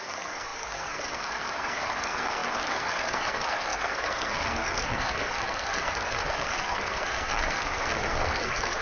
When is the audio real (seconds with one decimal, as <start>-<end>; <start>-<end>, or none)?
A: none

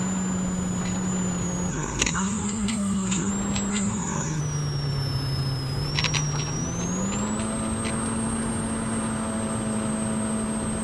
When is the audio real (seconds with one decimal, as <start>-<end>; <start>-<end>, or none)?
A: 0.0-1.7; 3.3-3.7; 4.4-10.8

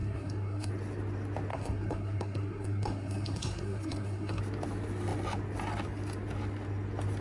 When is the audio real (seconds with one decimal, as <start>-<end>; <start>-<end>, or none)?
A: 0.7-1.5; 4.4-7.2

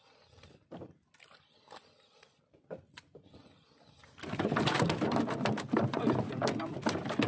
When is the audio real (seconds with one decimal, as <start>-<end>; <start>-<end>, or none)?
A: 0.0-7.3